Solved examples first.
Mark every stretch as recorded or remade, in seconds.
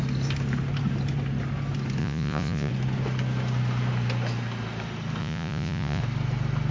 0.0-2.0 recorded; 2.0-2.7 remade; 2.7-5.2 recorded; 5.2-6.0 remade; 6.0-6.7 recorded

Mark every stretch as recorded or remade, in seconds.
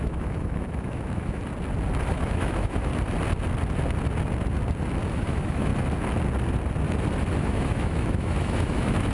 0.0-1.4 remade; 1.4-2.1 recorded; 2.1-2.9 remade; 2.9-5.1 recorded; 5.1-5.7 remade; 5.7-7.4 recorded; 7.4-9.1 remade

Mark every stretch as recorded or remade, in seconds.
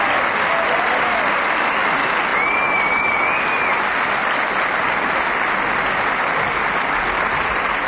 0.0-7.9 recorded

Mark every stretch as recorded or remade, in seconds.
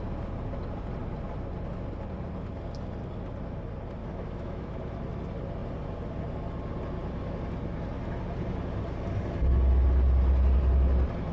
0.0-4.0 recorded; 4.0-4.8 remade; 4.8-11.3 recorded